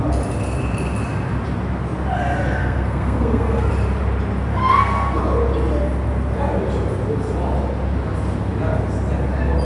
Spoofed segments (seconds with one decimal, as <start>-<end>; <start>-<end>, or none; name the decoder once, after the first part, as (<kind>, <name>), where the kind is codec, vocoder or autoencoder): 2.6-3.7 (codec, SNAC); 4.5-5.2